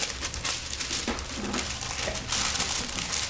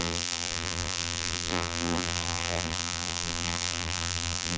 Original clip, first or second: first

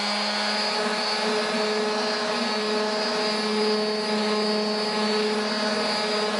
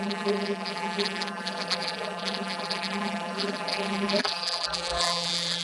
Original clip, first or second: first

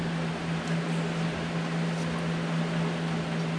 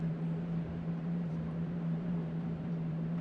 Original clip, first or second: first